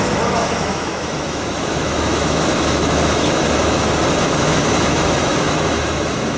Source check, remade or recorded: remade